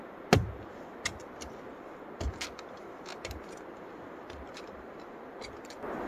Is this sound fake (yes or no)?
no